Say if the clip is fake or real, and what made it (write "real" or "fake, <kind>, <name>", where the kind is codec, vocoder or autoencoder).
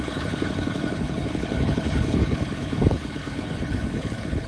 fake, codec, HILCodec